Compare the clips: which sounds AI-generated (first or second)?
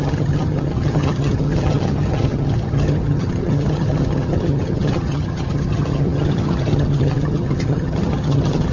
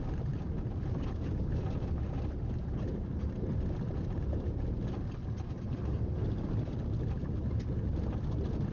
first